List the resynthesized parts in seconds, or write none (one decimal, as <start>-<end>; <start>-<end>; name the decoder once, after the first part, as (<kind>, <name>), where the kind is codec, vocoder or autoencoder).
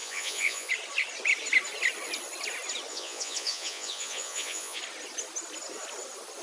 0.0-0.7 (vocoder, Vocos); 2.9-4.8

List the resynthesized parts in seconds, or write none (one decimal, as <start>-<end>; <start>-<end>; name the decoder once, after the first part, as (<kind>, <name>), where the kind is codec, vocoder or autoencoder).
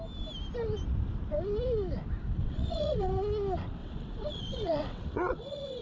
2.4-3.1 (vocoder, WaveNeXt); 3.8-5.8